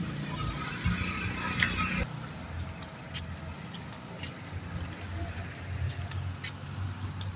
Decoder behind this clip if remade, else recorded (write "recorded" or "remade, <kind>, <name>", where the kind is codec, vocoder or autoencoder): recorded